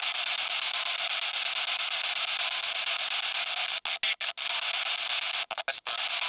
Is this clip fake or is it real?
real